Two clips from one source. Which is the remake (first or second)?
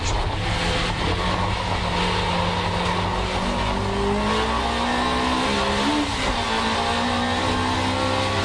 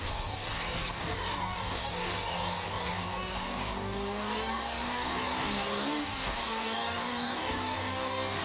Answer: second